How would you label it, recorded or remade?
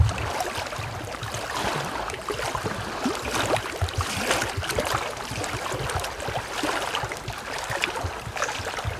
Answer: recorded